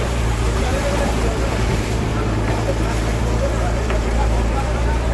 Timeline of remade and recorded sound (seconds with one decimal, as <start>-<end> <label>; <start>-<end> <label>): 0.0-2.1 remade; 2.1-3.2 recorded; 3.2-5.1 remade